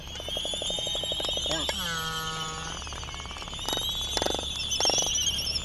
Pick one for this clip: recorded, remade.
recorded